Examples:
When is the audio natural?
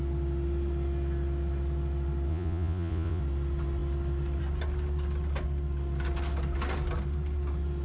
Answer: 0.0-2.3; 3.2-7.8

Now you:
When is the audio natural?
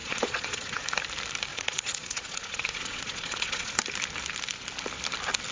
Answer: 0.8-1.5; 3.7-5.5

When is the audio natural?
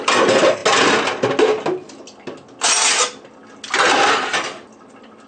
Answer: 0.0-5.3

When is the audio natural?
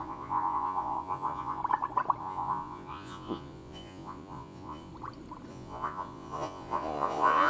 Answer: 1.6-2.2; 4.9-5.5